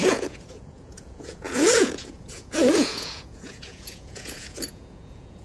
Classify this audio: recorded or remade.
remade